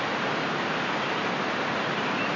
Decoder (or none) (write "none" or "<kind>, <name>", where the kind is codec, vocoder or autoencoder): none